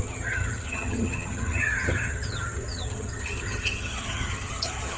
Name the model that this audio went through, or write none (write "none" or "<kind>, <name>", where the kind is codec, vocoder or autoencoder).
vocoder, HiFi-GAN